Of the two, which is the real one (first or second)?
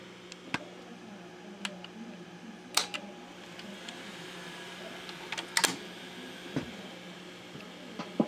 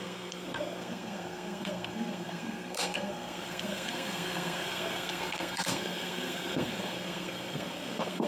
first